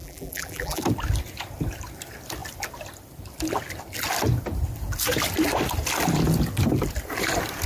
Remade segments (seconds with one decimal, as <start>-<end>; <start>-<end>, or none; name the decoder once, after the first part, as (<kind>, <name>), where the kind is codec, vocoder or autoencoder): 0.0-0.8 (vocoder, BigVGAN v2)